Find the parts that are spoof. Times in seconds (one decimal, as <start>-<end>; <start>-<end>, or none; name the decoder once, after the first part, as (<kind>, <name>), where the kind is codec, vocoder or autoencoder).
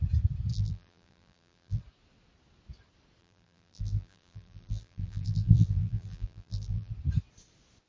0.5-1.8 (vocoder, BigVGAN v2); 3.2-6.9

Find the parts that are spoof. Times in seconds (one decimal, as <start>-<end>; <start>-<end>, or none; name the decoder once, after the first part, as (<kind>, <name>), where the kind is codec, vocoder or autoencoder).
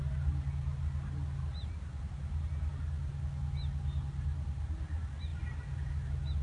none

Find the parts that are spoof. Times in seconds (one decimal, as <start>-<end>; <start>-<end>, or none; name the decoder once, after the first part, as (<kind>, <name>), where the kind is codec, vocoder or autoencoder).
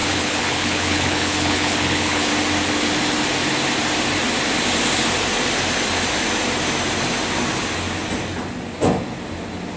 0.0-2.3 (codec, HILCodec)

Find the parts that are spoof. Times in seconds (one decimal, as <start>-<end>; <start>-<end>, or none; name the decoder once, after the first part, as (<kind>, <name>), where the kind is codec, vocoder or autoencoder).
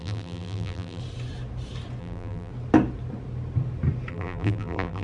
0.0-1.0 (vocoder, BigVGAN v2); 2.0-2.5; 4.1-5.0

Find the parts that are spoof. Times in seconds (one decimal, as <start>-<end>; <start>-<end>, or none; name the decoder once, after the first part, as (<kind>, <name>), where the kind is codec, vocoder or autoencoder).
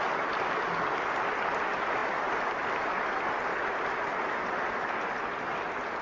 none